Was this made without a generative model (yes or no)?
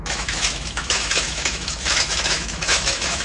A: no